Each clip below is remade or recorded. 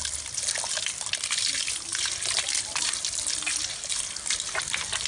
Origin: recorded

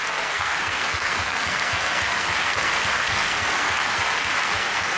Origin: remade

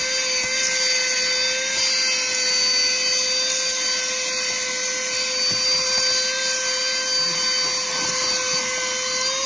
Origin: recorded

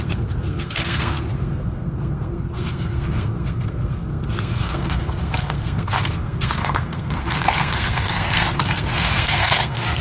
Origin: remade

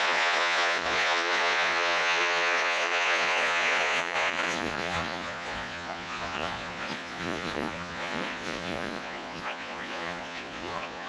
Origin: remade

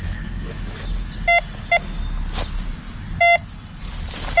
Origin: recorded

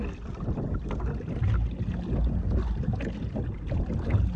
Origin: recorded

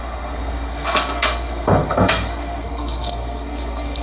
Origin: remade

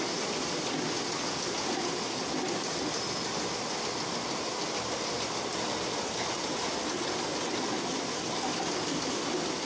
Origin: recorded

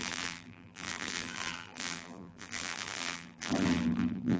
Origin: remade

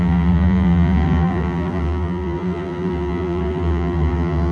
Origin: remade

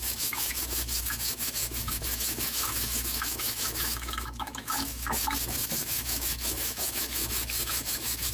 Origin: remade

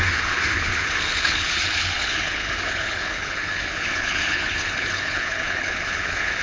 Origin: remade